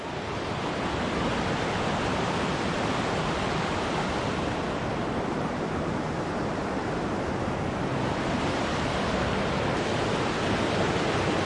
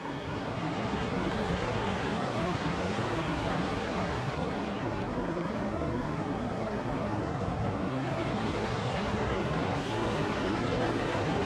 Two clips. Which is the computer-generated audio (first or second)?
second